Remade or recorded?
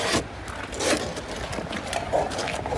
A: recorded